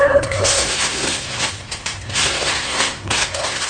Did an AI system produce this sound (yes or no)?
yes